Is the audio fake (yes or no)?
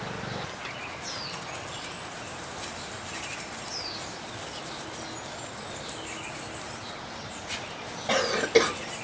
no